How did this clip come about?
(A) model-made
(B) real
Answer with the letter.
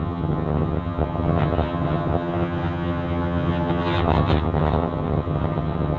A